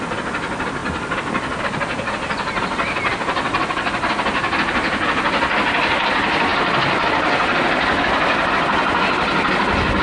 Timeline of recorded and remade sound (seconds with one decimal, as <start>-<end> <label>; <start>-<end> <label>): 0.0-10.0 recorded